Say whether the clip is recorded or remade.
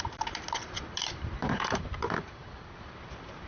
remade